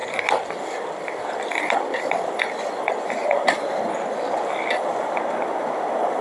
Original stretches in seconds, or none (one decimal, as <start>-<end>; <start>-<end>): none